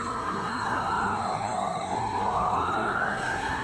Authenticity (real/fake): fake